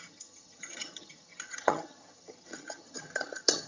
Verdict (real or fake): fake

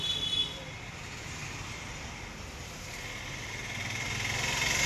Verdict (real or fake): real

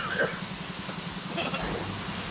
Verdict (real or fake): real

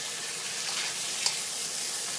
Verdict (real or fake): real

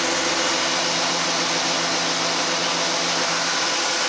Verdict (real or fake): real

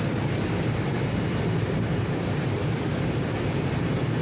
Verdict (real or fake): fake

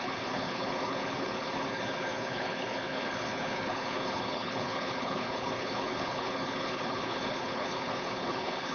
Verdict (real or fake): fake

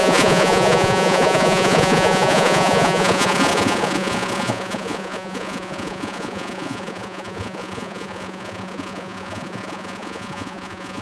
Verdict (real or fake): fake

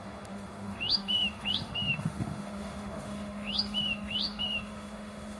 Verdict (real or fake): fake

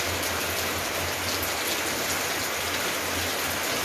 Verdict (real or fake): real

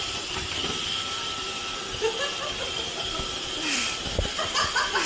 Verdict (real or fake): fake